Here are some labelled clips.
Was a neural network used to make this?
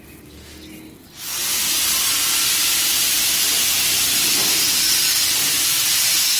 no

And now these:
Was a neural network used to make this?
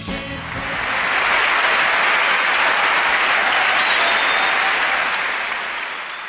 no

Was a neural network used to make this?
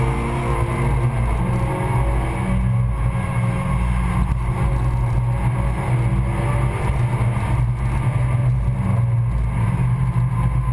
no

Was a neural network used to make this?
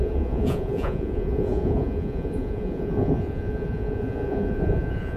yes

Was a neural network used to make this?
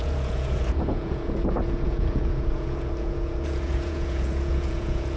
yes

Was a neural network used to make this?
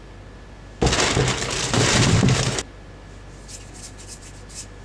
no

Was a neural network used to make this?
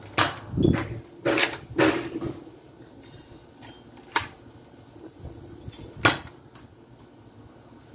no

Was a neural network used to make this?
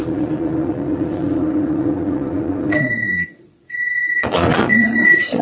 yes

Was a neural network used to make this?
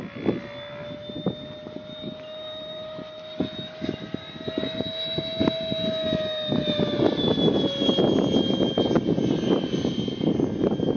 no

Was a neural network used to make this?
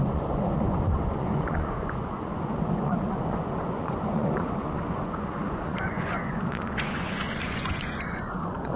yes